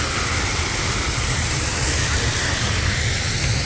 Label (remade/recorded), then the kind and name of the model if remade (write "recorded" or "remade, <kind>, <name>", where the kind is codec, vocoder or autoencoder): recorded